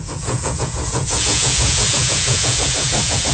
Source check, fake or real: fake